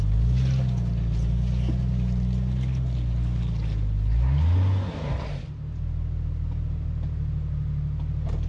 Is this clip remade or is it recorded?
recorded